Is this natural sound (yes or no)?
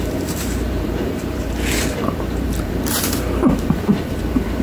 no